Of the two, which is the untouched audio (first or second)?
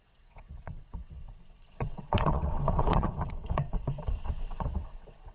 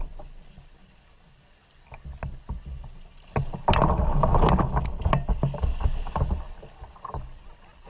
second